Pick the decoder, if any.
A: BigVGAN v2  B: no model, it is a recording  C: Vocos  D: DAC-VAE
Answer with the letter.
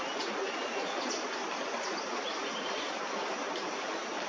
B